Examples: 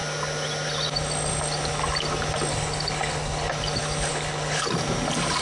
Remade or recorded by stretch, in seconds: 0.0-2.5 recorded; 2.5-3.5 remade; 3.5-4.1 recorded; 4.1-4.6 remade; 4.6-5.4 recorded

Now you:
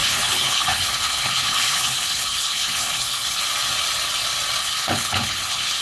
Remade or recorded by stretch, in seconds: 0.0-3.4 remade; 3.4-4.6 recorded; 4.6-5.8 remade

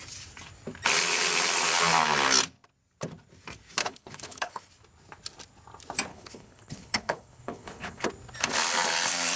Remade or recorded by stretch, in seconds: 0.0-3.8 recorded; 3.8-4.7 remade; 4.7-6.1 recorded; 6.1-8.1 remade; 8.1-9.4 recorded

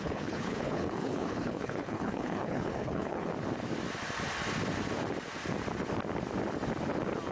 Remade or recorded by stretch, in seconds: 0.0-3.3 remade; 3.3-7.3 recorded